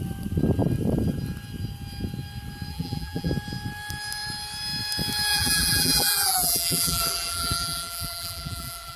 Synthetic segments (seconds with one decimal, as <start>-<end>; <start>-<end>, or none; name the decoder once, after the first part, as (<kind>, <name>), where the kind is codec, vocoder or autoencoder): 2.7-3.3 (vocoder, BigVGAN v2); 5.3-9.0